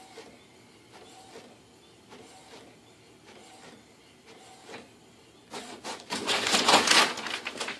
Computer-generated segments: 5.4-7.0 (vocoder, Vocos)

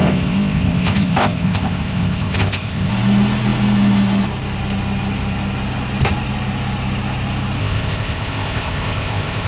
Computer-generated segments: 0.0-2.9 (codec, ZipCodec); 7.6-9.5

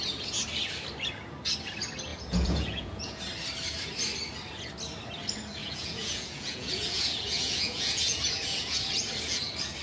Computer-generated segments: 2.1-3.2 (vocoder, Vocos); 5.6-9.0

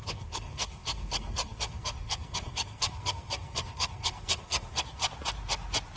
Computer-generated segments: 0.0-5.0 (codec, SNAC)

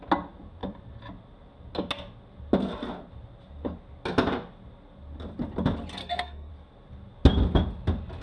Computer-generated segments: 6.0-6.5 (codec, SNAC)

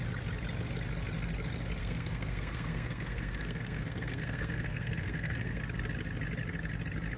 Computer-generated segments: 1.8-5.6 (codec, SNAC)

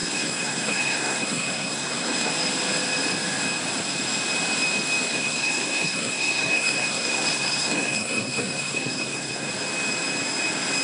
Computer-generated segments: 0.0-2.3 (codec, SNAC); 5.1-9.5

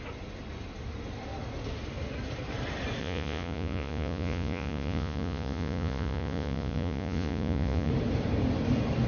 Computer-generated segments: 3.0-7.9 (vocoder, Vocos)